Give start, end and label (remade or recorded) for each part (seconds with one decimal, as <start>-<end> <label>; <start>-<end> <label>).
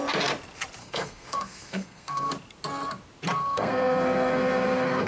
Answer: 0.0-0.8 recorded; 0.8-2.3 remade; 2.3-3.4 recorded; 3.4-5.1 remade